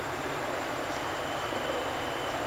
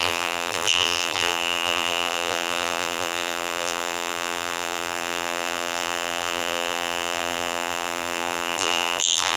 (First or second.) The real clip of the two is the first